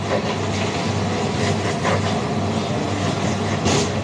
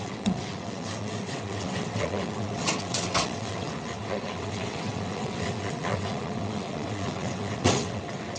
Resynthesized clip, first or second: second